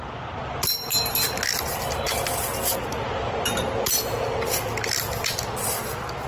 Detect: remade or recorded recorded